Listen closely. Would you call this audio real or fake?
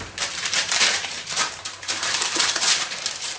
fake